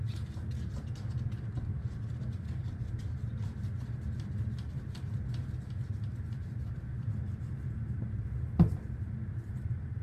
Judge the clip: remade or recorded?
remade